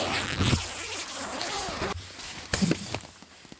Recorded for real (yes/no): yes